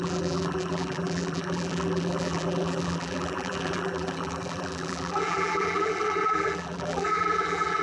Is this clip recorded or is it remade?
remade